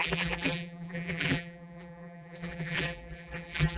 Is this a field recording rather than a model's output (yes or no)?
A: no